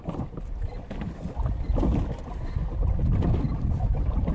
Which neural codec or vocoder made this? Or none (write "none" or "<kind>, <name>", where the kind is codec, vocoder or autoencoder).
none